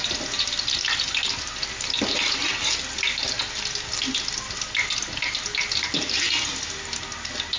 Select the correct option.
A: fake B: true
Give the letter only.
B